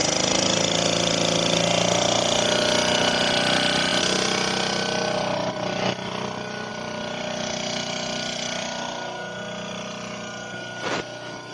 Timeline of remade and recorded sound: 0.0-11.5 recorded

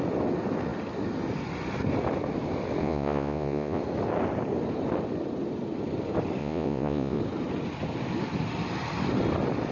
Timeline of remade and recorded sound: 0.0-2.8 recorded; 2.8-3.8 remade; 3.8-6.4 recorded; 6.4-7.2 remade; 7.2-9.7 recorded

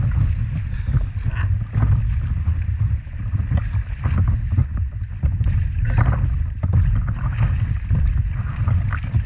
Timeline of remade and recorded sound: 0.0-9.3 recorded